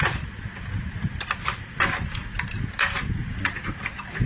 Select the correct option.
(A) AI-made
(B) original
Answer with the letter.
B